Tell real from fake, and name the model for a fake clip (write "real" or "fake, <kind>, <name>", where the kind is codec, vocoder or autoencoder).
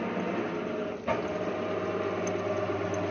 real